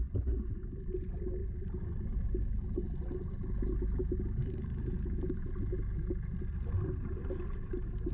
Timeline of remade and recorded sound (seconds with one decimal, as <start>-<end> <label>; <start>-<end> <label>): 0.0-4.0 recorded; 4.0-5.5 remade; 5.5-8.1 recorded